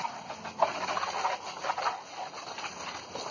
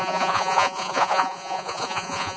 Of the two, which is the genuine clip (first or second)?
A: first